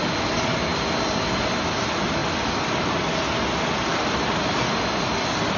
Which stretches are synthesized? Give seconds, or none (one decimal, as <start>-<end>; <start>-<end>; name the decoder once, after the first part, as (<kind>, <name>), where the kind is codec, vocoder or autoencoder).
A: none